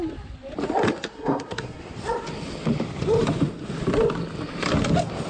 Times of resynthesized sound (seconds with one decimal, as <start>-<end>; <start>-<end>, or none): 1.1-1.8